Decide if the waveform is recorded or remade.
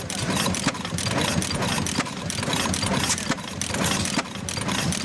recorded